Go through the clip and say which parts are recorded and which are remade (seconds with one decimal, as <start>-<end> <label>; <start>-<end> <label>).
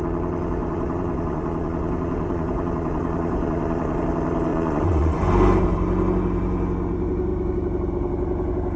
0.0-0.6 recorded; 0.6-4.0 remade; 4.0-4.5 recorded; 4.5-5.3 remade; 5.3-8.8 recorded